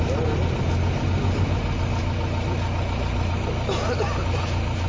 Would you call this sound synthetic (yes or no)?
no